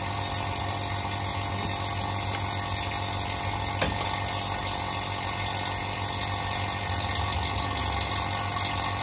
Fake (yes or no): no